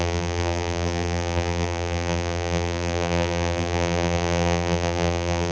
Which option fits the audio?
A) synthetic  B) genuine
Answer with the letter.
A